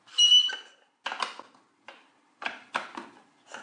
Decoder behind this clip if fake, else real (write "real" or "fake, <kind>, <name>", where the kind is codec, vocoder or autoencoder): real